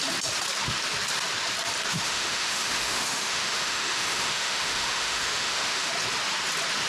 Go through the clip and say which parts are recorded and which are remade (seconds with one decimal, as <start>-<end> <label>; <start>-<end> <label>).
0.0-1.9 recorded; 1.9-5.9 remade; 5.9-6.9 recorded